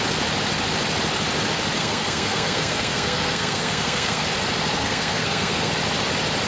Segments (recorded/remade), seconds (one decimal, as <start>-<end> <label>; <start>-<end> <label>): 0.0-1.8 recorded; 1.8-4.2 remade; 4.2-4.8 recorded; 4.8-5.7 remade; 5.7-6.5 recorded